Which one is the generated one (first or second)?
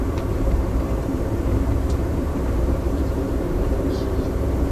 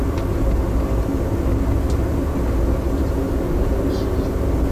first